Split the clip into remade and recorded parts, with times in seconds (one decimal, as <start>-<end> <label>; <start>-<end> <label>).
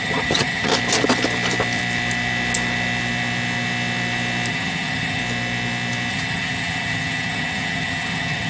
0.0-0.7 remade; 0.7-4.5 recorded; 4.5-5.2 remade; 5.2-6.1 recorded; 6.1-8.5 remade